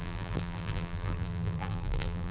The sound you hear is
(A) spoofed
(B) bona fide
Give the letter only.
A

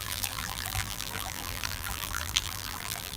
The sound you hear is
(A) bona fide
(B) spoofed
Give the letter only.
B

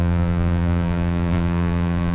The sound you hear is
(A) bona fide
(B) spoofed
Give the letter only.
B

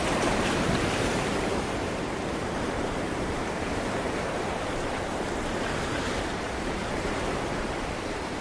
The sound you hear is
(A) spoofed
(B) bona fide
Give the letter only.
A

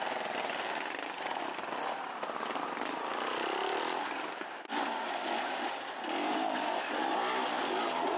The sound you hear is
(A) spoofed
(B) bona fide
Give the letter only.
A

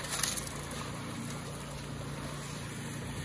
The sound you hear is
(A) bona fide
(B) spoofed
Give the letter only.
A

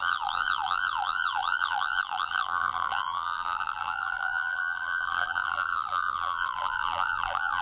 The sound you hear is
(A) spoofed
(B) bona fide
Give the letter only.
A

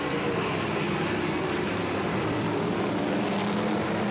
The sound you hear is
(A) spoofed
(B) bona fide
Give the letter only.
A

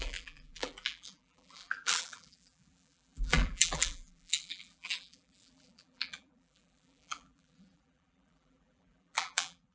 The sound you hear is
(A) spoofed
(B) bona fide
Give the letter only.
A